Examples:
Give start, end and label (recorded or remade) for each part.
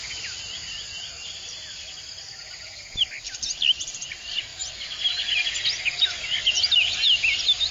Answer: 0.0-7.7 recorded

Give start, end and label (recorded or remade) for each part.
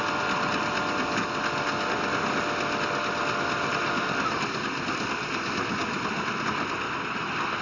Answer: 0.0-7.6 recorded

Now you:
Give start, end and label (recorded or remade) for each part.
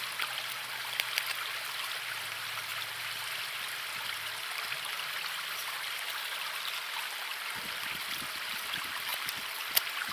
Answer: 0.0-10.1 recorded